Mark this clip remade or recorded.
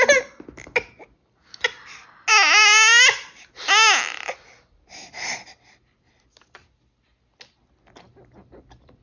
recorded